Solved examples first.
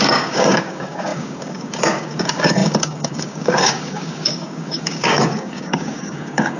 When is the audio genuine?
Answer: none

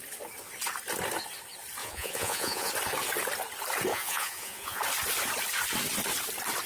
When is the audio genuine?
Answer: 0.0-1.8; 2.7-3.9; 4.8-6.7